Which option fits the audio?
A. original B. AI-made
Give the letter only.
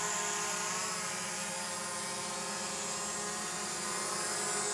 A